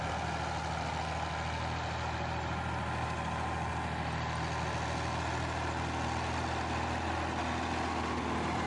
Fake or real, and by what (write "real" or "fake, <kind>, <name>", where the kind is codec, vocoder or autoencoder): real